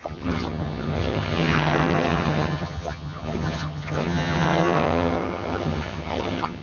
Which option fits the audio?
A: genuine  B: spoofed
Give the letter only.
B